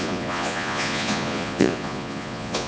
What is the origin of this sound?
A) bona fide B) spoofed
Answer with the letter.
B